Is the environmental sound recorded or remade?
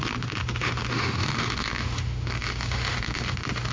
remade